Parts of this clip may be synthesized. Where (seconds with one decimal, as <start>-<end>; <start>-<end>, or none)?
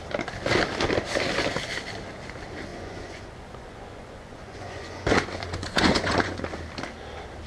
2.7-6.4